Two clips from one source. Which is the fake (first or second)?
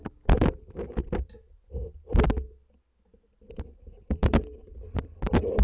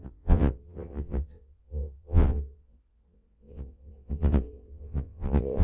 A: second